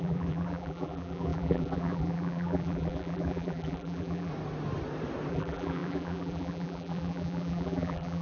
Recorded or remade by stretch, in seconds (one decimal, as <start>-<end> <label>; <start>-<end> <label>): 0.0-4.3 remade; 4.3-5.3 recorded; 5.3-8.2 remade